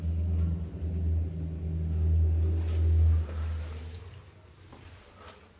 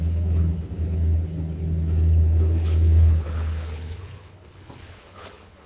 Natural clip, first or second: first